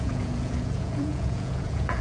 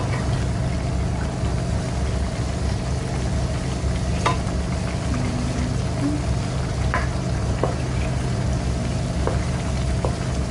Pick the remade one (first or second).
first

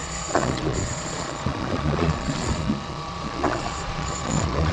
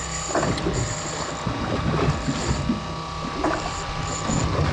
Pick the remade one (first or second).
first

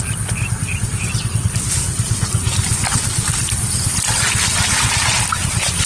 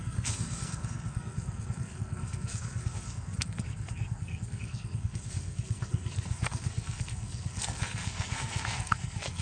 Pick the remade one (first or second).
second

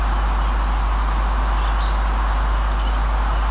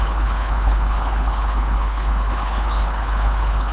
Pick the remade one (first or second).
second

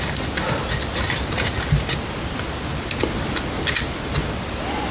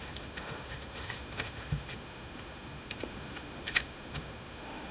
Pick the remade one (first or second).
second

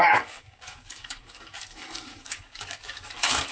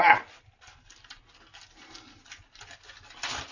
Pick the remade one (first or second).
first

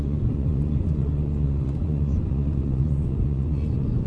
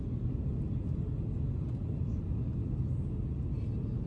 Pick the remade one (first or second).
first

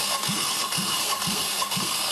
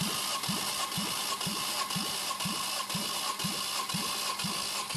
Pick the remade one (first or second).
first